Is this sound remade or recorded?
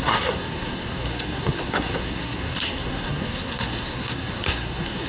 remade